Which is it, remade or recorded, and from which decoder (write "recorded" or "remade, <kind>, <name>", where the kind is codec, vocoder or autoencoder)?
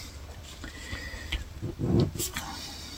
remade, vocoder, BigVGAN v2